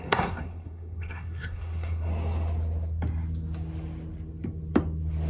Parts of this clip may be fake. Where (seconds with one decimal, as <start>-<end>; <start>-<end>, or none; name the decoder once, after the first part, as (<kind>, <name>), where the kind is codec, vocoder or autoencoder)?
0.0-2.1 (codec, SNAC)